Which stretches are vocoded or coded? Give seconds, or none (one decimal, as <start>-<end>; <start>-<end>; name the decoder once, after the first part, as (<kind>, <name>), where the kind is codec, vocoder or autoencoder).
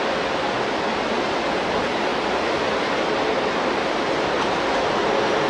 none